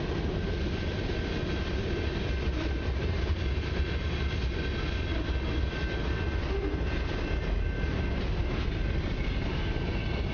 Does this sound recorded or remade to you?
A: recorded